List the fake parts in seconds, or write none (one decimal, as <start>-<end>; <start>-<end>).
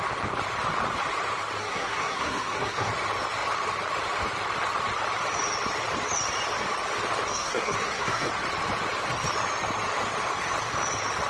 1.6-2.9; 7.3-8.3